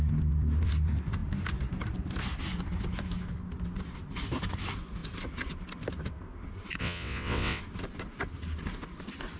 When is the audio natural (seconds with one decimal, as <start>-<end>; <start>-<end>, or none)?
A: 0.0-6.8; 7.6-9.4